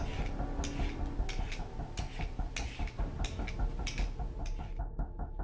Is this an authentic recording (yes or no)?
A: yes